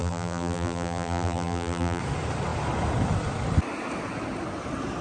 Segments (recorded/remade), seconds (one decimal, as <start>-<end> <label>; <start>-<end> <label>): 0.0-2.0 remade; 2.0-5.0 recorded